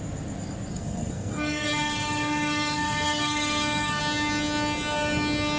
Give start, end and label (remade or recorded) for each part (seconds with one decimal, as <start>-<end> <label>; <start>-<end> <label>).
0.0-0.7 recorded; 0.7-4.0 remade; 4.0-5.6 recorded